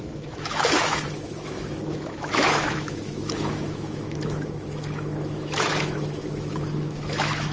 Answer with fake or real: fake